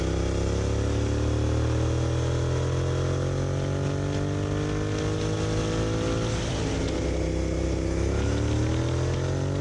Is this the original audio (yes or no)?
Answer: yes